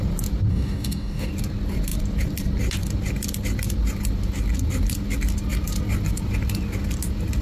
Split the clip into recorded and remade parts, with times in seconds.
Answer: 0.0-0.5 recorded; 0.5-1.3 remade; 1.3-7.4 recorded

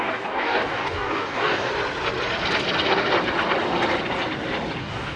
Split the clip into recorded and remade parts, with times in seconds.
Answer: 0.0-1.7 remade; 1.7-4.8 recorded; 4.8-5.2 remade

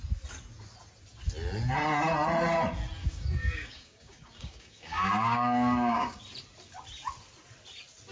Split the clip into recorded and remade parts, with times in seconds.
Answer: 0.0-3.0 recorded; 3.0-6.2 remade; 6.2-8.1 recorded

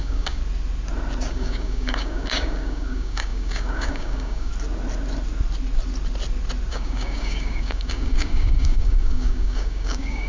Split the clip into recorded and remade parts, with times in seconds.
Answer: 0.0-0.4 remade; 0.4-1.3 recorded; 1.3-4.5 remade; 4.5-6.7 recorded; 6.7-10.3 remade

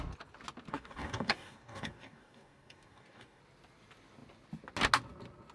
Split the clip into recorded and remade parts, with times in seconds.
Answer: 0.0-0.7 recorded; 0.7-3.4 remade; 3.4-5.5 recorded

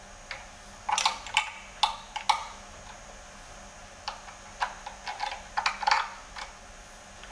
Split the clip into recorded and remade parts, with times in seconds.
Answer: 0.0-7.3 recorded

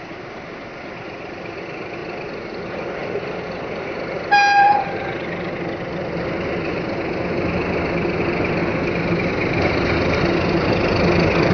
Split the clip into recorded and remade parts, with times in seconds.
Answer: 0.0-11.5 recorded

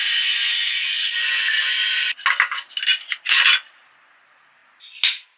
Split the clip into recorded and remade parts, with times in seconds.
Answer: 0.0-5.4 recorded